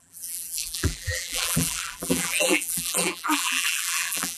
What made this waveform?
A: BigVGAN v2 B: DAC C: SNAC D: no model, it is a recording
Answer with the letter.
A